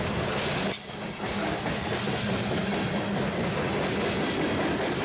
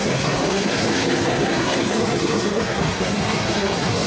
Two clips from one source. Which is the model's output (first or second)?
second